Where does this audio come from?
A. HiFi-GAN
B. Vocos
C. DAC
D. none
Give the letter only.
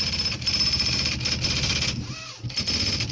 D